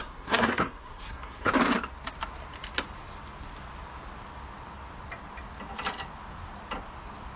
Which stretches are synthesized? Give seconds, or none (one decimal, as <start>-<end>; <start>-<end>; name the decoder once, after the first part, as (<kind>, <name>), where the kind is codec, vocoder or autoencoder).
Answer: 0.0-1.5 (codec, SNAC)